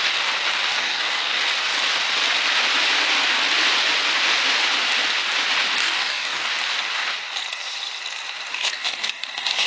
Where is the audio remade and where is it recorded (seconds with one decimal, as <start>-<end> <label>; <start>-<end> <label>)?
0.0-0.7 recorded; 0.7-1.5 remade; 1.5-5.8 recorded; 5.8-6.5 remade; 6.5-8.5 recorded; 8.5-9.7 remade